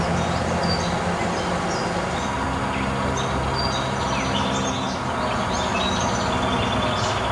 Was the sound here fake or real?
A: real